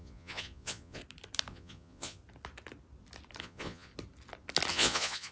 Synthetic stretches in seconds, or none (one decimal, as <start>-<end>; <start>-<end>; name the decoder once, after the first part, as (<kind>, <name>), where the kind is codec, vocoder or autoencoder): 0.0-1.0 (vocoder, Vocos); 1.5-2.2; 3.4-3.9; 4.7-5.3